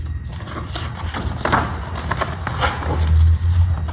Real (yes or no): yes